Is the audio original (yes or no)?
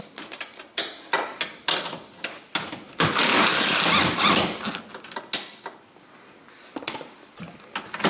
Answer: yes